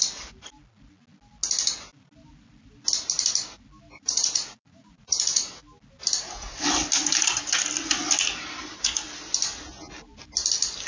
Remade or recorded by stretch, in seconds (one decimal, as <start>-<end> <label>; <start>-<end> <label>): 0.0-4.0 recorded; 4.0-5.5 remade; 5.5-10.9 recorded